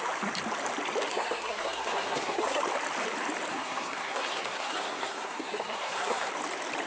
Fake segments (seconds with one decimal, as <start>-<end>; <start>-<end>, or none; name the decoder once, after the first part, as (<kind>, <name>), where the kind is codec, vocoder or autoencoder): 1.1-2.6 (codec, SNAC); 3.5-6.3

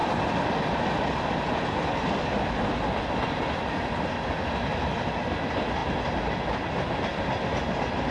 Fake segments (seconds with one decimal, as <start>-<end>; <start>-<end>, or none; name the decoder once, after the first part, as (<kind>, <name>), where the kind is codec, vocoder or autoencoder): none

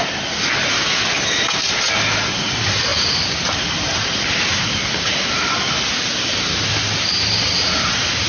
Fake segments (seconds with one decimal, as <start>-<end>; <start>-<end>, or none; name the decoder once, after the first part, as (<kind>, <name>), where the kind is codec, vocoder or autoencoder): none

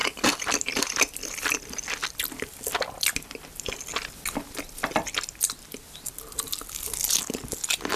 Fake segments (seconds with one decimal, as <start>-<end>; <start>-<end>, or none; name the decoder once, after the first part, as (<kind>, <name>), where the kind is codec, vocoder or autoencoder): 0.0-1.6 (vocoder, BigVGAN v2); 2.0-2.7

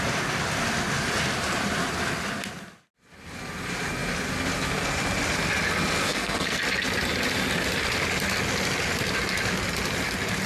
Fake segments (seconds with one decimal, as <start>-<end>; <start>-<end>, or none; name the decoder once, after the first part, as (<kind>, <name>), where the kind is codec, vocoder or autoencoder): 6.0-6.6 (codec, SNAC)

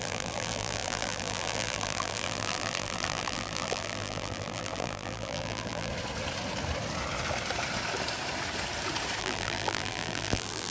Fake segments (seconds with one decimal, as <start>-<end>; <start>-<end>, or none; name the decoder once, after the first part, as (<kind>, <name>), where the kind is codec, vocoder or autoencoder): 0.0-5.9 (vocoder, BigVGAN v2); 9.2-10.7